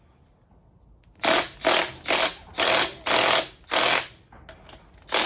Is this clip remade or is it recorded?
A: recorded